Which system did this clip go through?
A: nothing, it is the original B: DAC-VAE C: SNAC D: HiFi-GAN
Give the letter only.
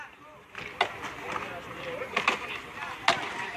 A